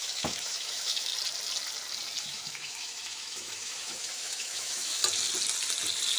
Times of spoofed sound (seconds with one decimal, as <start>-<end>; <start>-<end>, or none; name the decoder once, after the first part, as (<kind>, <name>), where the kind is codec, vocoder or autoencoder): 0.0-1.1 (autoencoder, DAC-VAE); 2.2-5.0